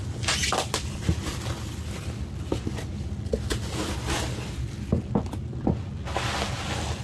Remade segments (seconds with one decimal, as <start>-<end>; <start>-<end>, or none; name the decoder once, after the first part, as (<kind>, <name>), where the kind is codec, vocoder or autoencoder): none